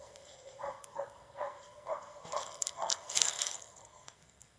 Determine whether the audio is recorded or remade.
remade